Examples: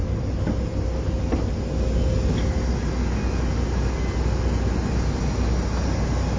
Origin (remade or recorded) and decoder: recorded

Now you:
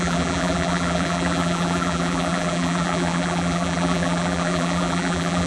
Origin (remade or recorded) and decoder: remade, vocoder, BigVGAN v2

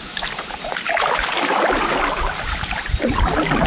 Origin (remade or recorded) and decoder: recorded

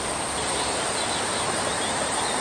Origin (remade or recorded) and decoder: remade, vocoder, BigVGAN v2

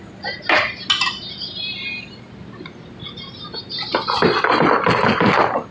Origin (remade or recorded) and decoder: recorded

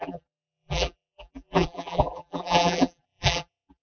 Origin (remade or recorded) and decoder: remade, vocoder, BigVGAN v2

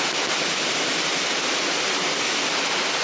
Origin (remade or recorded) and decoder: recorded